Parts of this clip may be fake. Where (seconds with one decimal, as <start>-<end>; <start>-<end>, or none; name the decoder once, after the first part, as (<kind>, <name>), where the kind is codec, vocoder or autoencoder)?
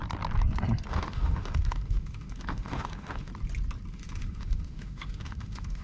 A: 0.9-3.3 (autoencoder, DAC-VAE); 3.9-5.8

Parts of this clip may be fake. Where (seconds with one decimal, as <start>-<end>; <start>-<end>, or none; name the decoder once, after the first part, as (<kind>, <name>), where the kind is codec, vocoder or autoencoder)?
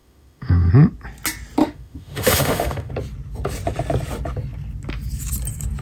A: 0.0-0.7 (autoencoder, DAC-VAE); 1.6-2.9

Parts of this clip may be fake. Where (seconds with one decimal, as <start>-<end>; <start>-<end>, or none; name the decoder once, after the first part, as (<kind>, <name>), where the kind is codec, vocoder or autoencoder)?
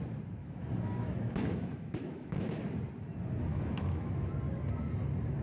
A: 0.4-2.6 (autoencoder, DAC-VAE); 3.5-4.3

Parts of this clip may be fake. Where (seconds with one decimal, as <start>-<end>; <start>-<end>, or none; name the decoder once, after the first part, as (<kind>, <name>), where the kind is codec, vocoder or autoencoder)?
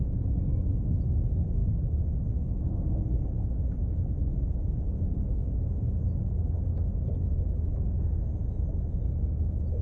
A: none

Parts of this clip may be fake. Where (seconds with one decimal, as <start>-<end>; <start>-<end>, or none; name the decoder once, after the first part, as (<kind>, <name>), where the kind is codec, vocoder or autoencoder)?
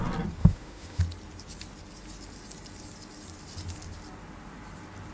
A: 0.4-1.0 (autoencoder, DAC-VAE)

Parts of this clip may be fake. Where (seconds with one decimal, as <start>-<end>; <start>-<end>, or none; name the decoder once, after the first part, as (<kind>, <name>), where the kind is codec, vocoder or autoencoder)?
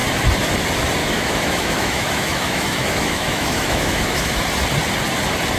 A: 1.0-4.4 (autoencoder, DAC-VAE)